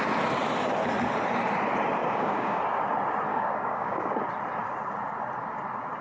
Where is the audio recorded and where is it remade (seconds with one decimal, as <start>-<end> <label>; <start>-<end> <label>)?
0.0-2.0 recorded; 2.0-2.6 remade; 2.6-3.3 recorded; 3.3-4.2 remade; 4.2-6.0 recorded